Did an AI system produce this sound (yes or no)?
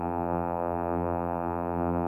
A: yes